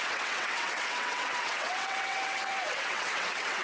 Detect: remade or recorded remade